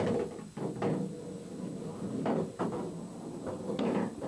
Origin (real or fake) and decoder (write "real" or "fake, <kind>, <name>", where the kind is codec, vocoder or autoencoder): real